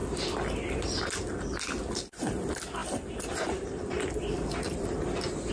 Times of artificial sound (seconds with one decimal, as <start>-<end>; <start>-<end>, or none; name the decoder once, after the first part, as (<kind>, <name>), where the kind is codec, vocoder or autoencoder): none